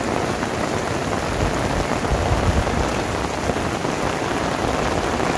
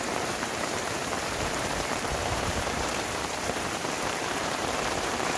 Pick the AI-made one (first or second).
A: second